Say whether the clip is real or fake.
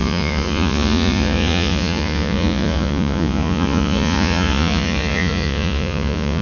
fake